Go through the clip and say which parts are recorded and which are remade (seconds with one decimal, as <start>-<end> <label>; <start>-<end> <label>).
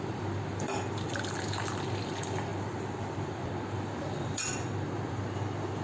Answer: 0.0-2.5 remade; 2.5-4.0 recorded; 4.0-4.5 remade; 4.5-5.1 recorded; 5.1-5.8 remade